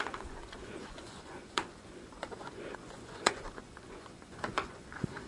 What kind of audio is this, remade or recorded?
remade